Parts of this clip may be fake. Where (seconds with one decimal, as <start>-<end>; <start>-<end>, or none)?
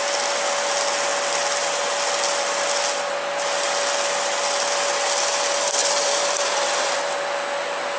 5.8-6.9